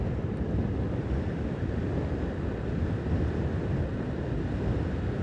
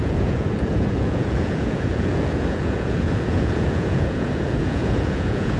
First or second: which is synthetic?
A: second